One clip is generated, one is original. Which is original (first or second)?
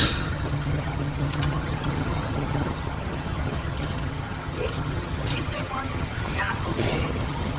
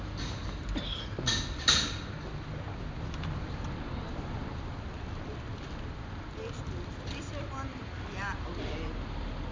second